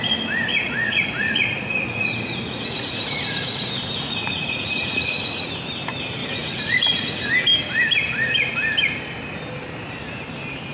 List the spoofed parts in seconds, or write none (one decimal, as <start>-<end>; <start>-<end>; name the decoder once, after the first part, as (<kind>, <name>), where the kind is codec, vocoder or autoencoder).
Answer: 0.5-5.5 (vocoder, Vocos); 6.2-7.3